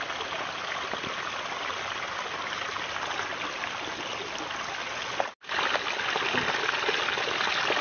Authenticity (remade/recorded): recorded